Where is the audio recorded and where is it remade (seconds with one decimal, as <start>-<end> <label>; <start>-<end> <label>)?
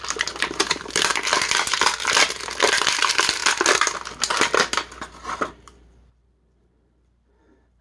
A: 0.0-3.4 remade; 3.4-5.4 recorded; 5.4-7.8 remade